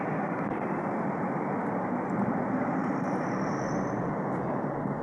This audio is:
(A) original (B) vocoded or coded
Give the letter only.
B